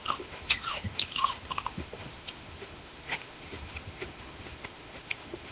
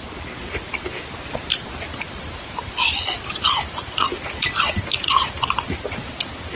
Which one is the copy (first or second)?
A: first